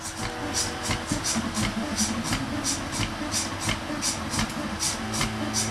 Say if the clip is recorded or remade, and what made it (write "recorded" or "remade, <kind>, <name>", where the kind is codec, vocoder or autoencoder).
recorded